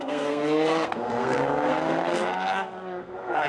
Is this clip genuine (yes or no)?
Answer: no